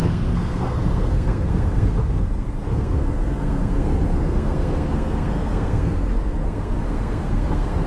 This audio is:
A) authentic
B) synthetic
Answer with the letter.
B